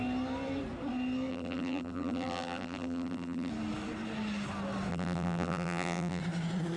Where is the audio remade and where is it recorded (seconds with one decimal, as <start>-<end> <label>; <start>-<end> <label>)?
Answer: 0.0-1.3 recorded; 1.3-3.5 remade; 3.5-4.9 recorded; 4.9-6.2 remade; 6.2-6.8 recorded